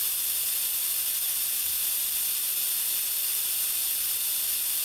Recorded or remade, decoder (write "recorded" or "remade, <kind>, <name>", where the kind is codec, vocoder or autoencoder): recorded